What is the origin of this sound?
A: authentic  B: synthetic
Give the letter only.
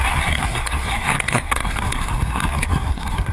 B